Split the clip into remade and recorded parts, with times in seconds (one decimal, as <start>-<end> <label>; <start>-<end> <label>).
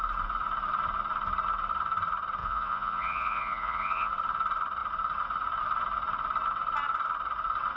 0.0-2.4 recorded; 2.4-4.1 remade; 4.1-7.8 recorded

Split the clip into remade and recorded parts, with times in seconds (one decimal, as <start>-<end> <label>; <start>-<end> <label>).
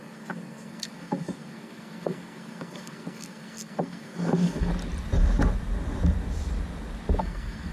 0.0-4.7 remade; 4.7-7.2 recorded; 7.2-7.7 remade